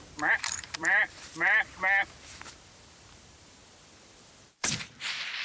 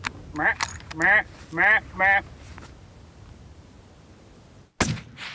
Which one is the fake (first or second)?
first